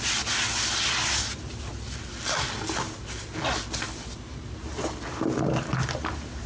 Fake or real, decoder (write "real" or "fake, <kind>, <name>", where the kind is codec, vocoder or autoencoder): real